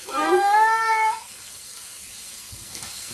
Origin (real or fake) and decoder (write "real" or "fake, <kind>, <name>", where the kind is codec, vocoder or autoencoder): fake, codec, SNAC